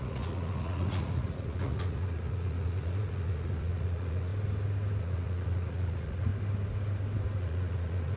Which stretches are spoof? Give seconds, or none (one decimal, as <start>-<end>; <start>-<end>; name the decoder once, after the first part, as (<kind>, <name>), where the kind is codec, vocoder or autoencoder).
0.0-4.3 (vocoder, Vocos); 5.0-6.3; 7.4-8.2